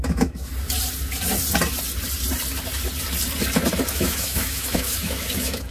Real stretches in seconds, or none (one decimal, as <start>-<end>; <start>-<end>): 0.5-3.9